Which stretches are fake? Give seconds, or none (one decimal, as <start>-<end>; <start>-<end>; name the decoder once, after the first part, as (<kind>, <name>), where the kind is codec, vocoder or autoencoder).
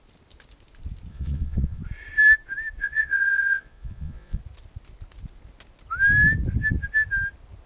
1.1-1.8 (vocoder, Vocos); 2.8-4.4